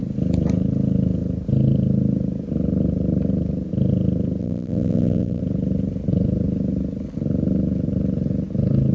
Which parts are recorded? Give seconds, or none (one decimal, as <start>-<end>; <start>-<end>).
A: 0.0-4.4; 5.4-8.9